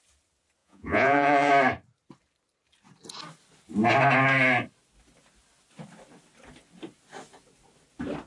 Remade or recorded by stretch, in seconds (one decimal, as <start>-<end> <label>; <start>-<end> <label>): 0.0-0.6 recorded; 0.6-1.5 remade; 1.5-8.3 recorded